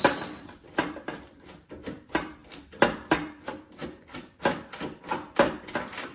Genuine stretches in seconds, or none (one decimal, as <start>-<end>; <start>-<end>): 2.4-3.5